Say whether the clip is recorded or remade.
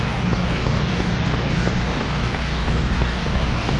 remade